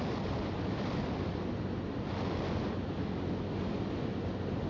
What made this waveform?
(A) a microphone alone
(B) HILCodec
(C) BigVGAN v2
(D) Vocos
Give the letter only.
A